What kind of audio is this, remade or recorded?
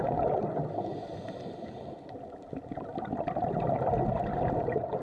recorded